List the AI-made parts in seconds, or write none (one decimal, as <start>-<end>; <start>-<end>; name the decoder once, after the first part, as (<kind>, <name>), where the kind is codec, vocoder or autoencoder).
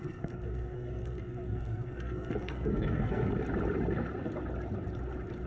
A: 0.0-3.3 (codec, SNAC)